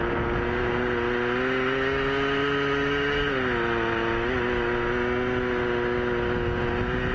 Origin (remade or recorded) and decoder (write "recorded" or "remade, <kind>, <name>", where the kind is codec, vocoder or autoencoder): recorded